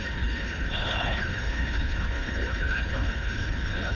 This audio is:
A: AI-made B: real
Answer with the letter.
A